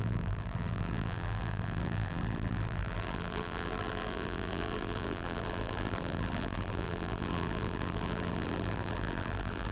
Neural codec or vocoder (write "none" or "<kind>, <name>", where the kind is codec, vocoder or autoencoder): vocoder, BigVGAN v2